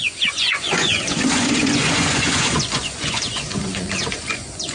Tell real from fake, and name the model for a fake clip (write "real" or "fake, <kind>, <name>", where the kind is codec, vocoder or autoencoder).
fake, vocoder, Vocos